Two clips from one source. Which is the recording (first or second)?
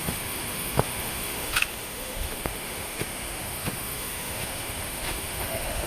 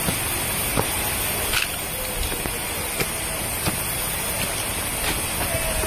second